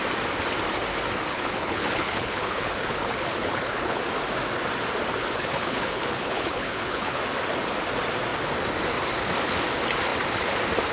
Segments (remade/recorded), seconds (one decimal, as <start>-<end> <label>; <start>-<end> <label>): 0.0-1.3 recorded; 1.3-4.0 remade; 4.0-5.2 recorded; 5.2-7.2 remade; 7.2-10.9 recorded

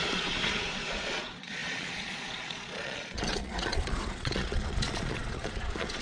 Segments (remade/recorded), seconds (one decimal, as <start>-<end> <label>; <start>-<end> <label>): 0.0-6.0 remade